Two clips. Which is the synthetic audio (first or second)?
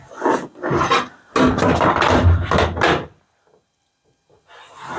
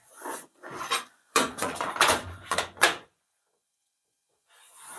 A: second